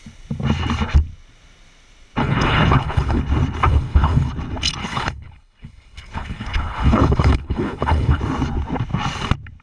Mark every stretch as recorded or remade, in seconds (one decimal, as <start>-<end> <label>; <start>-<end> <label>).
0.0-2.2 recorded; 2.2-3.2 remade; 3.2-3.7 recorded; 3.7-4.3 remade; 4.3-4.8 recorded; 4.8-8.2 remade; 8.2-9.6 recorded